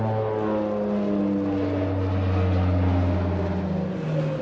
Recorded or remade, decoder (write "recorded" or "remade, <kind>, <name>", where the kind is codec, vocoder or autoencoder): recorded